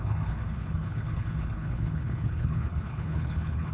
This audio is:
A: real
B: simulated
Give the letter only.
B